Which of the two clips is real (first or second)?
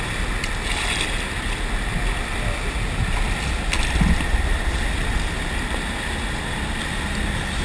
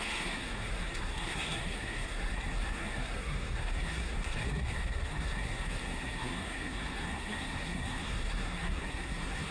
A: first